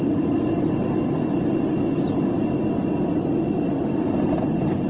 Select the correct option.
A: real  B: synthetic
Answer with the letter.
A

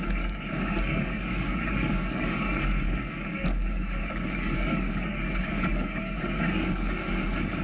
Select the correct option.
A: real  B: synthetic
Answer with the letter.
B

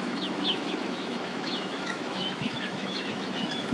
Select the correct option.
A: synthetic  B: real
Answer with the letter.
A